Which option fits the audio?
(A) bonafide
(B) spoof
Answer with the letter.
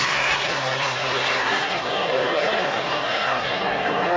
B